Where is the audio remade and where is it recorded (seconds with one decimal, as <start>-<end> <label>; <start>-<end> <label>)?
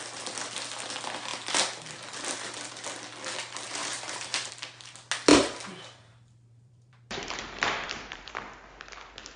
0.0-3.8 recorded; 3.8-4.5 remade; 4.5-5.3 recorded; 5.3-8.3 remade; 8.3-9.4 recorded